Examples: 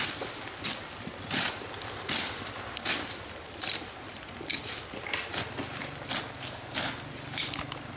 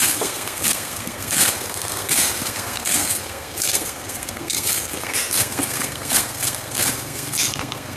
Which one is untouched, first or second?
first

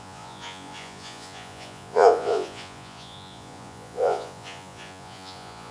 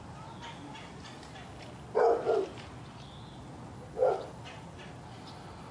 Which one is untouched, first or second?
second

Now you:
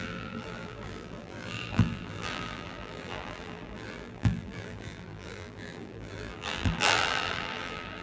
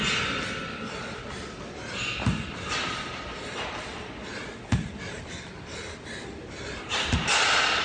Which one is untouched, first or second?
second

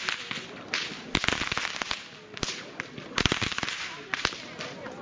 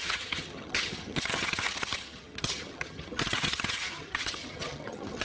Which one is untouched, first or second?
first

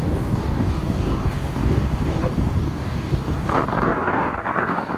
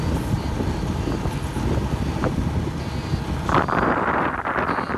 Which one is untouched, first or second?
second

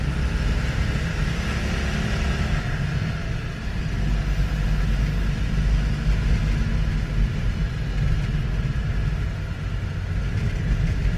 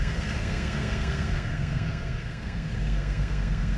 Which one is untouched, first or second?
first